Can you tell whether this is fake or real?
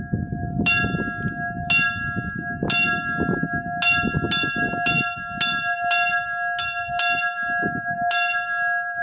real